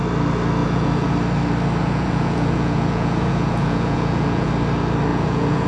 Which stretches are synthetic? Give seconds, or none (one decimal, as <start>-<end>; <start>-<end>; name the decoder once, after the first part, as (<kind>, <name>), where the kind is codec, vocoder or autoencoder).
0.6-1.1 (vocoder, Vocos); 1.8-4.5; 5.1-5.7